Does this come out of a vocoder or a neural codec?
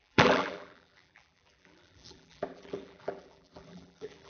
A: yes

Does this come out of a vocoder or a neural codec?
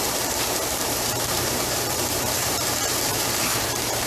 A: yes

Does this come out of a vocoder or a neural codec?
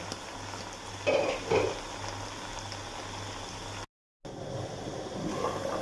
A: no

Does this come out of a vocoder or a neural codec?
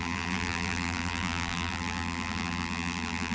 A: yes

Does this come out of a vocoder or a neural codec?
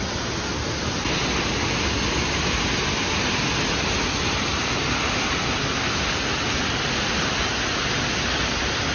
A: no